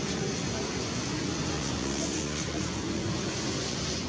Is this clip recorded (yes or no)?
no